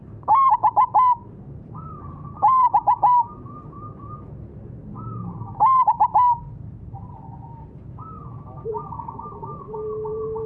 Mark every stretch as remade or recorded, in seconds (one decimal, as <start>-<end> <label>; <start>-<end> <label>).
0.0-4.8 remade; 4.8-8.7 recorded; 8.7-10.5 remade